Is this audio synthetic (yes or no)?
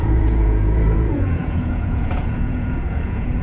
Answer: yes